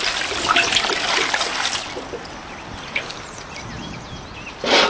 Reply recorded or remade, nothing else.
recorded